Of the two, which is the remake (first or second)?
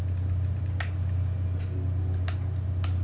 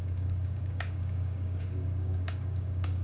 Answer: second